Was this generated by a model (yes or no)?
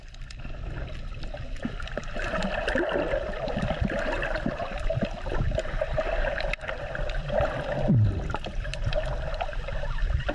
no